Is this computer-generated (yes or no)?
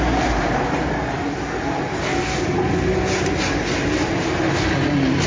no